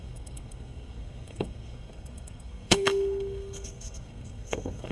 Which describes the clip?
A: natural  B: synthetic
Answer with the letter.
B